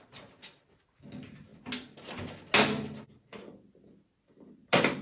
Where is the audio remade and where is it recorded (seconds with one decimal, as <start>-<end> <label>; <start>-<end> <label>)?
0.0-5.0 recorded